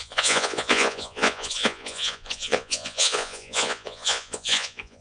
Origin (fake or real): fake